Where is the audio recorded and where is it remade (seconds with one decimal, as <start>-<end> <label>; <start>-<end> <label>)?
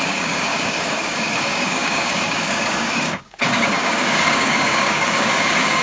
0.0-5.8 remade